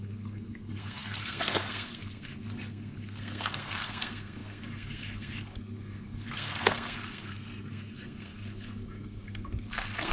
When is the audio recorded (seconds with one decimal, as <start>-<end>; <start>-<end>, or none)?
none